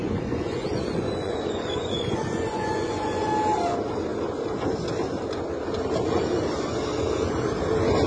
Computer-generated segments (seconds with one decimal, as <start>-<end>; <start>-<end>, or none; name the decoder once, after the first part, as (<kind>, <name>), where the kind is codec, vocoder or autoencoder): 0.0-3.3 (vocoder, Vocos)